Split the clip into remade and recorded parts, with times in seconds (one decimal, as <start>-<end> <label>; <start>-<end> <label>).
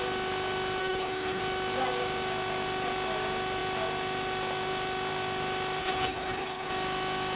0.0-0.8 recorded; 0.8-1.4 remade; 1.4-5.8 recorded; 5.8-6.7 remade; 6.7-7.4 recorded